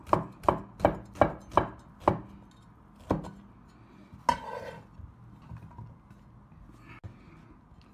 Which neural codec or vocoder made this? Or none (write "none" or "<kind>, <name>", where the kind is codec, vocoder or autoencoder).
none